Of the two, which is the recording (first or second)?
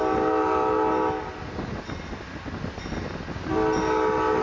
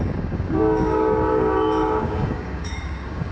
first